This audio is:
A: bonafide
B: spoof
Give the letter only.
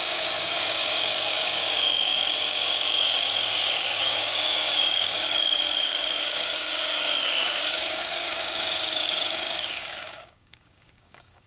B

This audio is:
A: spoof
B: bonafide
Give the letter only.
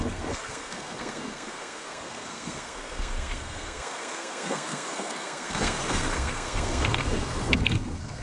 A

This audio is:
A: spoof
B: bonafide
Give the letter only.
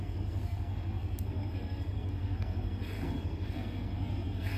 A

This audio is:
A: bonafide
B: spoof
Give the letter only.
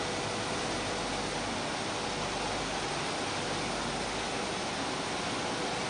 A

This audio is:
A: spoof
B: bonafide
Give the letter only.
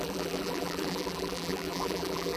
A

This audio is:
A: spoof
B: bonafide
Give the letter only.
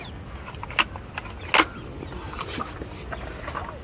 B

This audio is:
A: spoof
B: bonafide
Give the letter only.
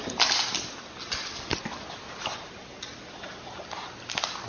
B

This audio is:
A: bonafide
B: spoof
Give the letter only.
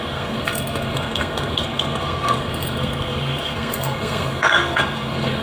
B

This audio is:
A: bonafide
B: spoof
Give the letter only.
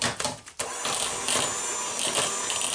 A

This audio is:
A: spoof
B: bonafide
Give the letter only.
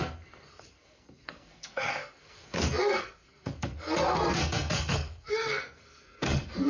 A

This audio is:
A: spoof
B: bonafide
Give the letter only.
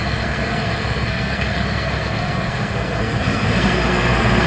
A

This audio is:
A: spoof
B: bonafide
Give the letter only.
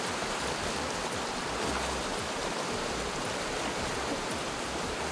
A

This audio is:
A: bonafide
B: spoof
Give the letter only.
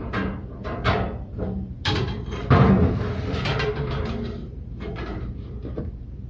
B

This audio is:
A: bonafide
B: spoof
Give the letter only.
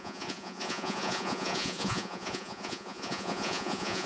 B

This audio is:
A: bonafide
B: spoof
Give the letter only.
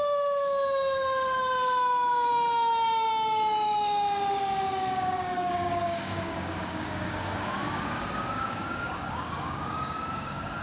B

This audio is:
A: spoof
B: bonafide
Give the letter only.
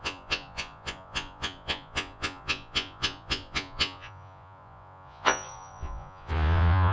A